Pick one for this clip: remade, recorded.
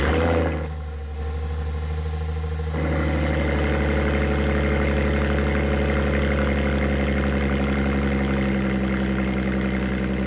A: recorded